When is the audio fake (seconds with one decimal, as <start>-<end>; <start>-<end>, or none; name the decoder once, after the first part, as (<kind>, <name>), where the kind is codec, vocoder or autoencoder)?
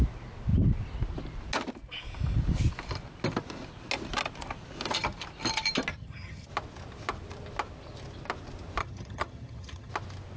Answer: 5.9-6.5 (vocoder, HiFi-GAN); 8.8-9.9